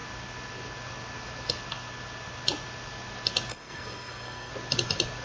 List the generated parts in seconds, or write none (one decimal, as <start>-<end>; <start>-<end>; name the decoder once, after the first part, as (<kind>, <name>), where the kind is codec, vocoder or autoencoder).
3.5-4.5 (codec, SNAC)